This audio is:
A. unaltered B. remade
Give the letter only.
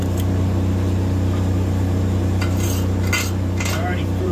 B